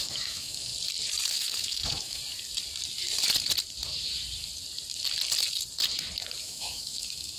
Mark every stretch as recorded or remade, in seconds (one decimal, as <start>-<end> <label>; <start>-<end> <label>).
0.0-0.7 remade; 0.7-1.3 recorded; 1.3-2.2 remade; 2.2-6.4 recorded; 6.4-7.4 remade